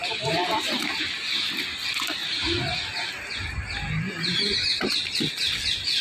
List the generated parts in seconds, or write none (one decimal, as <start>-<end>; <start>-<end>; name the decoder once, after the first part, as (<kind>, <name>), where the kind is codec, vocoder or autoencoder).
none